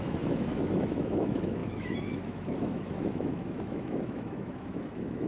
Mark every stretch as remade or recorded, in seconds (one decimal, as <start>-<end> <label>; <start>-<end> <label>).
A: 0.0-5.3 remade